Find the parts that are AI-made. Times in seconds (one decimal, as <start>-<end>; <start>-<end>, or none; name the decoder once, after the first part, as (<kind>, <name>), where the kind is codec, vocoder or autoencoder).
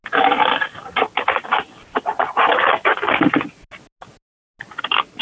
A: none